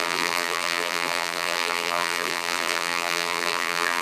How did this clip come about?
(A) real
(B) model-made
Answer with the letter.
B